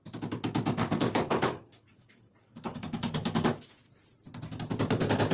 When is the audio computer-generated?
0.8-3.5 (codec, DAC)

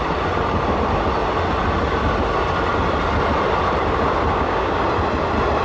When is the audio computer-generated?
4.3-4.8 (codec, DAC)

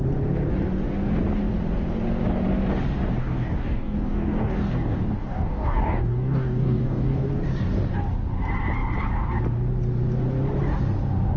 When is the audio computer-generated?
3.2-7.3 (codec, DAC)

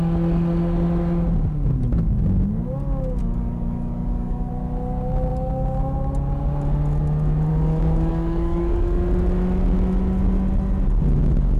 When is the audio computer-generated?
3.2-4.5 (codec, DAC); 7.5-9.0

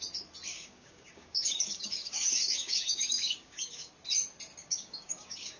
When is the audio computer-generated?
0.5-3.9 (codec, DAC); 4.6-5.6

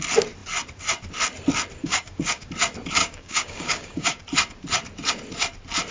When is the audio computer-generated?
1.8-2.5 (codec, DAC); 3.0-4.2

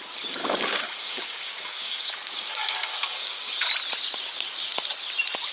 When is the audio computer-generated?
0.4-3.7 (codec, DAC)